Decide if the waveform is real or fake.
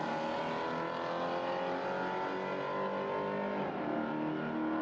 real